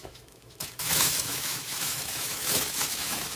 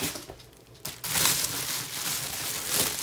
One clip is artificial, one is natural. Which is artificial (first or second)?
first